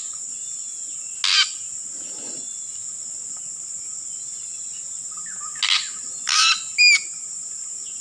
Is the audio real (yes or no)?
yes